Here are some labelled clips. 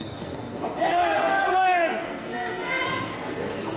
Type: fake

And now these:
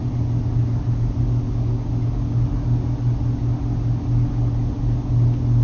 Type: real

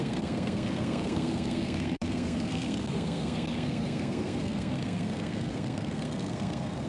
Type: fake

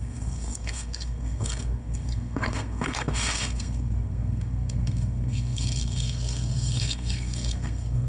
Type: fake